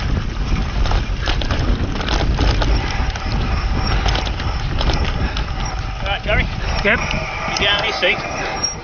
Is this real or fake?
real